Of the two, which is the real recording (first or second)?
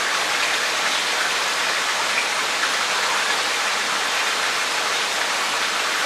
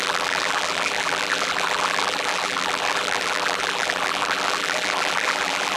first